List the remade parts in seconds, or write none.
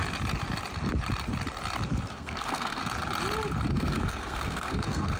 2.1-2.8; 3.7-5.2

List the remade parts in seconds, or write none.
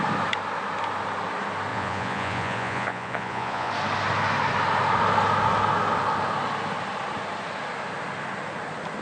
1.7-3.7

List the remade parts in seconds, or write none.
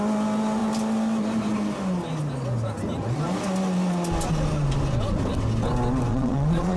6.1-6.8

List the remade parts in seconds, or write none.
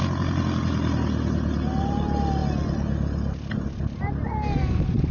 none